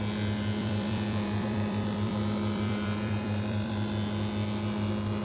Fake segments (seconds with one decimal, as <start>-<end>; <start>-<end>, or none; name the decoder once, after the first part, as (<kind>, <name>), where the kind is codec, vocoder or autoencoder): 0.6-3.7 (vocoder, BigVGAN v2)